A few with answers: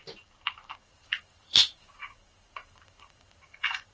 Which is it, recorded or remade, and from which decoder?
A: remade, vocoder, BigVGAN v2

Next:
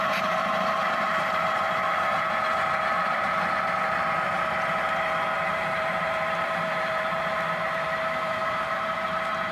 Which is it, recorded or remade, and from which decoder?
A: remade, vocoder, BigVGAN v2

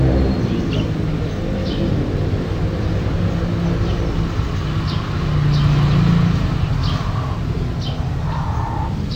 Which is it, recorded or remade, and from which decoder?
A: recorded